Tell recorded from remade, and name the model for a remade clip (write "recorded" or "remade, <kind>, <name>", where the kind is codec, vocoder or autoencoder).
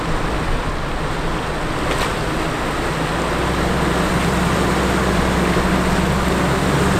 recorded